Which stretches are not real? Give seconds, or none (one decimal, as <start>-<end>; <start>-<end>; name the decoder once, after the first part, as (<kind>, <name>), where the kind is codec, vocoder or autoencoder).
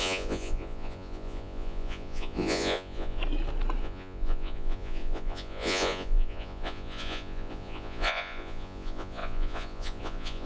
0.0-3.2 (vocoder, Vocos); 3.8-10.5